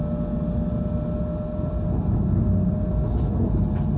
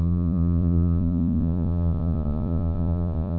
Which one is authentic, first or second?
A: first